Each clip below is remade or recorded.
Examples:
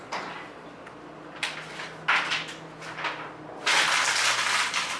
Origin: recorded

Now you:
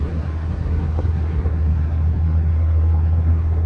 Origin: remade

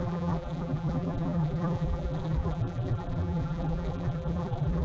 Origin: remade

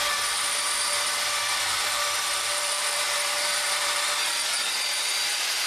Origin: remade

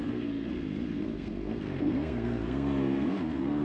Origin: remade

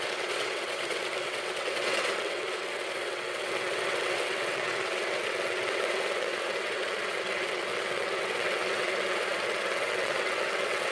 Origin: remade